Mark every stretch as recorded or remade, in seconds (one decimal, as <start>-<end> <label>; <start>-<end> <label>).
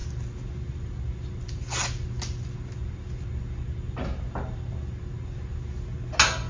0.0-6.5 recorded